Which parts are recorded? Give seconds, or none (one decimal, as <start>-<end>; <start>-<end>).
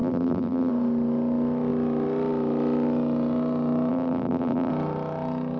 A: 0.7-3.9; 4.7-5.6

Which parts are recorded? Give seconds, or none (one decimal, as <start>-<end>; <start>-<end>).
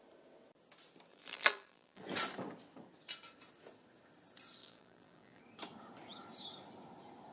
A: 0.0-1.1; 2.0-4.6; 5.4-7.3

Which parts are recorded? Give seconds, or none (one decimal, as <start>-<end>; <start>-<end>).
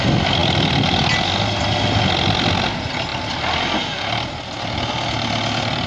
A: 0.0-5.9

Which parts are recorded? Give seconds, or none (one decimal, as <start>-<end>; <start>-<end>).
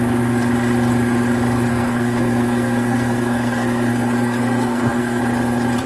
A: 0.0-1.7; 5.2-5.9